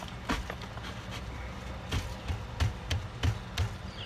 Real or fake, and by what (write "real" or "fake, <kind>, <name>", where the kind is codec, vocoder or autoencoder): real